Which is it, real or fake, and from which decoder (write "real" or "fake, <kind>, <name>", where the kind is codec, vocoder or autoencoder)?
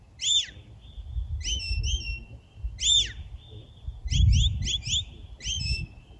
real